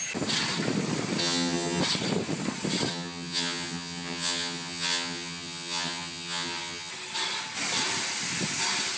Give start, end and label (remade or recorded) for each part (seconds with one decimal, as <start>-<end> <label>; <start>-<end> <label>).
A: 0.0-1.2 recorded; 1.2-1.8 remade; 1.8-2.9 recorded; 2.9-6.9 remade; 6.9-9.0 recorded